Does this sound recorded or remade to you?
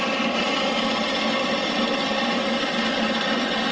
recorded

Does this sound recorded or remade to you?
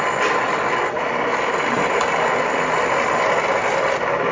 recorded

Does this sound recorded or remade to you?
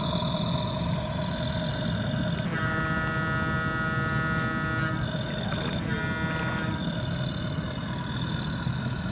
recorded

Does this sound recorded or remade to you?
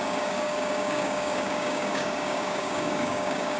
remade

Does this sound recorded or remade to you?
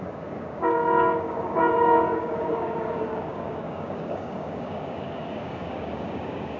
remade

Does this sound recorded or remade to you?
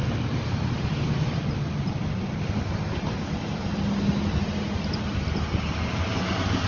recorded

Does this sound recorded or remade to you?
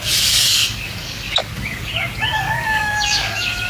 remade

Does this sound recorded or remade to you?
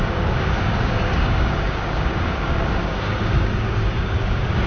remade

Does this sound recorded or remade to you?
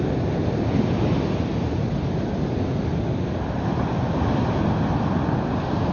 recorded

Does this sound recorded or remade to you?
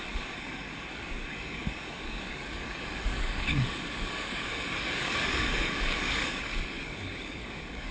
remade